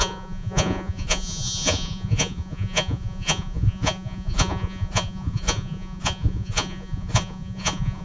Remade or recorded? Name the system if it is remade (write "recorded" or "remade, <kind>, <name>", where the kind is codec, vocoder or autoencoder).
remade, vocoder, Vocos